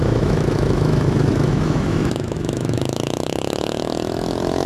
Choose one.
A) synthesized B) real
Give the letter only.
A